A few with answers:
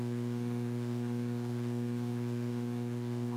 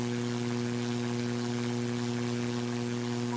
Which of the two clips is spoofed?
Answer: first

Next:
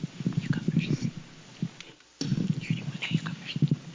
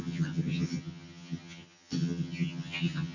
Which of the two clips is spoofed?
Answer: second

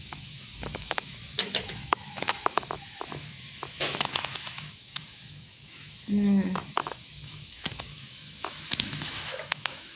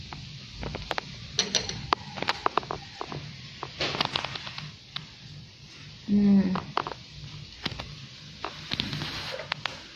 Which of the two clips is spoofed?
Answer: first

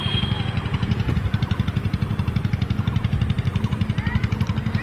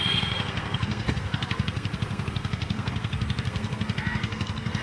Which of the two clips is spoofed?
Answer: second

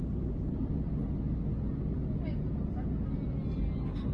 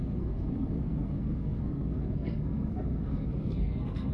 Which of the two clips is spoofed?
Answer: second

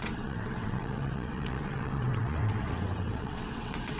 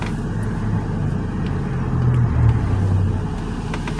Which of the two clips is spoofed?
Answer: first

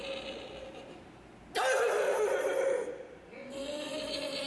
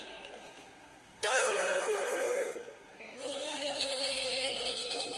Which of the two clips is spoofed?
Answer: second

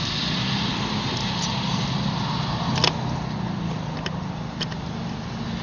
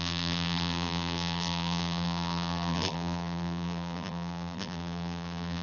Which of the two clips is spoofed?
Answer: second